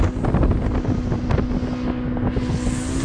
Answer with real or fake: real